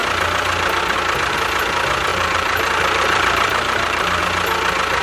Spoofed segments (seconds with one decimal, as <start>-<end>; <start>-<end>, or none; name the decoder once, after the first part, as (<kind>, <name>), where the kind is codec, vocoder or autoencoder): 2.1-4.2 (vocoder, BigVGAN v2)